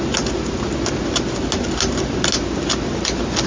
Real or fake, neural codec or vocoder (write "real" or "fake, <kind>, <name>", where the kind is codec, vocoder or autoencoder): real